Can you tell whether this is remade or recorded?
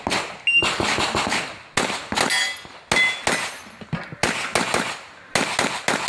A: recorded